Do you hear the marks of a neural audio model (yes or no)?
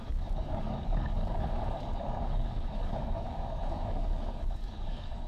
yes